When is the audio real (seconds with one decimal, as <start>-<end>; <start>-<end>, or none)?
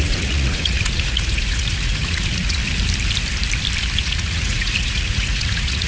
2.6-4.0